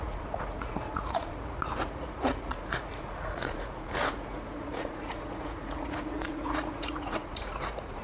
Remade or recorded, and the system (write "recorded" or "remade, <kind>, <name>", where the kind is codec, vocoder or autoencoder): remade, vocoder, Vocos